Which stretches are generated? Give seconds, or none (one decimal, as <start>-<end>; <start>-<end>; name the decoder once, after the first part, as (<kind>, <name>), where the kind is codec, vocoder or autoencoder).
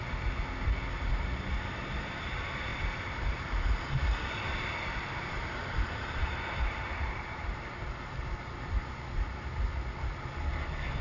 2.7-7.8 (vocoder, BigVGAN v2)